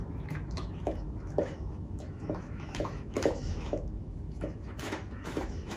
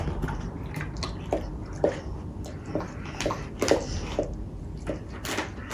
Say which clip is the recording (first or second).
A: second